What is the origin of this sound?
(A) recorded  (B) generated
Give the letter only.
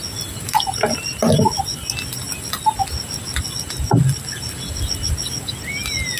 A